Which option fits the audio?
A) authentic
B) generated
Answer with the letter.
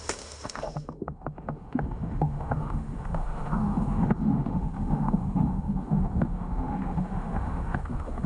B